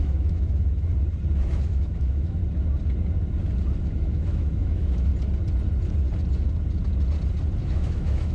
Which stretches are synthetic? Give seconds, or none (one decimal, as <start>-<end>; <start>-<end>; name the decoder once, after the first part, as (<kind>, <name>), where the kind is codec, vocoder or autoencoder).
0.0-0.9 (autoencoder, DAC-VAE); 1.4-2.4; 3.8-5.1; 7.6-8.3